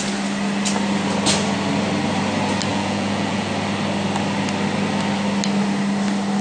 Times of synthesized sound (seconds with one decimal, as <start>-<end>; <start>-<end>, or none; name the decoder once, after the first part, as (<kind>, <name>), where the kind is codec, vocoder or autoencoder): 2.7-3.5 (vocoder, Vocos)